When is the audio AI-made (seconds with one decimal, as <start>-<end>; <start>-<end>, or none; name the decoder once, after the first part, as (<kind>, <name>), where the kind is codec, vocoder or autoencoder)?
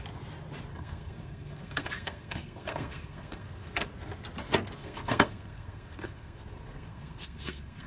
0.7-3.9 (codec, SNAC); 4.8-7.9